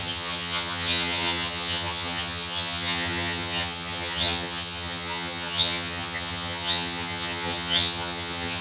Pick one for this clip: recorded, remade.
remade